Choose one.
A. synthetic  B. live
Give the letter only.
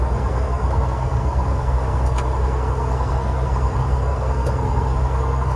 A